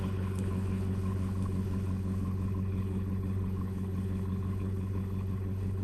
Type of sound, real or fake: fake